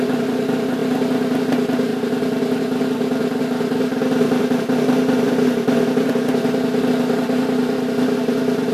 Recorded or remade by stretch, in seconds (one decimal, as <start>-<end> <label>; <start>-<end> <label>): 0.0-8.7 recorded